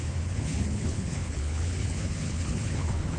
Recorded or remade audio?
remade